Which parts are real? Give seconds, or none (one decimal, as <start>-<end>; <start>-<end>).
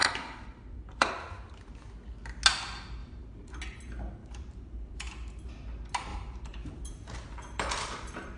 1.1-3.0; 3.6-4.2; 5.5-6.1